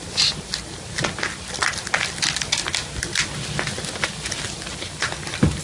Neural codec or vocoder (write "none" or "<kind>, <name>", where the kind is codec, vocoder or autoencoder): none